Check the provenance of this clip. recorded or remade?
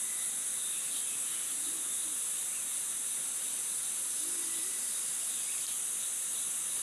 recorded